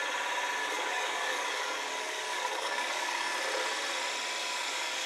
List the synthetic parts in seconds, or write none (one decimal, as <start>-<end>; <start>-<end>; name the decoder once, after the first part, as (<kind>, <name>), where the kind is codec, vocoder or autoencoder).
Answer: 0.6-3.3 (codec, DAC); 4.4-5.1